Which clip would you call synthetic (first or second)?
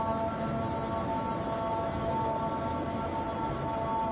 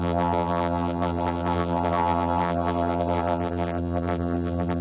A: second